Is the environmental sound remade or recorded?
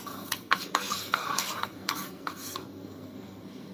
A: remade